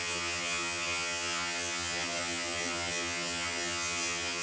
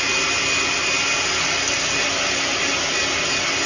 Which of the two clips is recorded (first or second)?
second